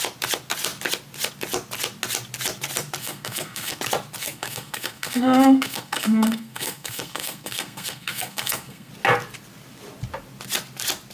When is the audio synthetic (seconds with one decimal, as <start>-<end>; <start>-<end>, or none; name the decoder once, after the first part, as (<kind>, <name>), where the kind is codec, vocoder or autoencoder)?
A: 3.0-3.8 (codec, SNAC); 4.2-8.9